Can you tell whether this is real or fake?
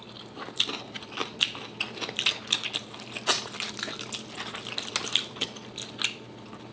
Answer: real